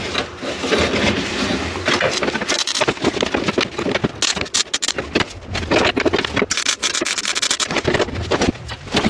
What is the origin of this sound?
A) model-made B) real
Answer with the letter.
B